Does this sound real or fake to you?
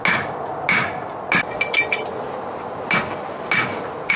real